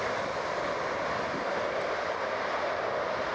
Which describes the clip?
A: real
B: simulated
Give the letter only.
A